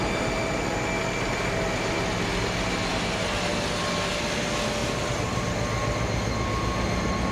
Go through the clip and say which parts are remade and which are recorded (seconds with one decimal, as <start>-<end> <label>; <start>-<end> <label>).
0.0-4.8 recorded; 4.8-5.4 remade; 5.4-7.3 recorded